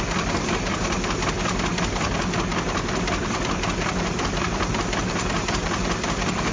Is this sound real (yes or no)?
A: yes